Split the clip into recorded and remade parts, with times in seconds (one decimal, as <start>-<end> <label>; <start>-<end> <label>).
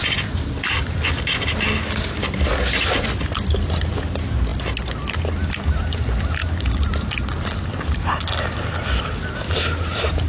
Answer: 0.0-10.3 recorded